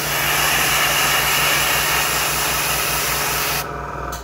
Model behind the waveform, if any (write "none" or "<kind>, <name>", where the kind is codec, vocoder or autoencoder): vocoder, BigVGAN v2